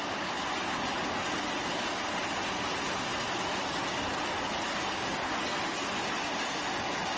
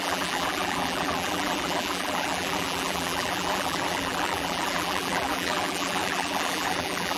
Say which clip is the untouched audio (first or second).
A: first